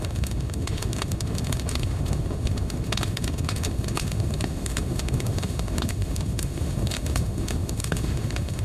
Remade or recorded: remade